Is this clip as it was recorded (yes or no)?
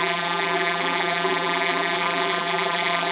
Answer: no